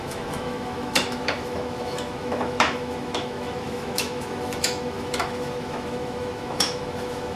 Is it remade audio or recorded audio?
remade